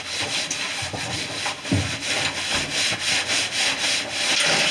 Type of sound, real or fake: real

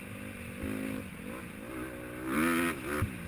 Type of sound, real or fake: real